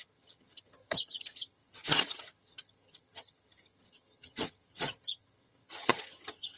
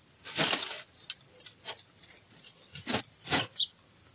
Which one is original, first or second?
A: second